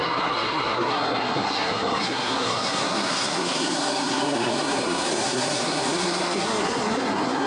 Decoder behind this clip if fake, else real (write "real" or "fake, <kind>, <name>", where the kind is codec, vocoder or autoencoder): fake, codec, SNAC